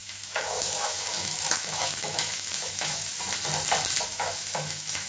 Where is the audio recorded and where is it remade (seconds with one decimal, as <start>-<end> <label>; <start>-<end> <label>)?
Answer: 0.0-3.1 remade; 3.1-4.1 recorded; 4.1-5.1 remade